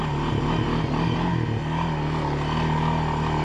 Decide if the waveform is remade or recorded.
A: recorded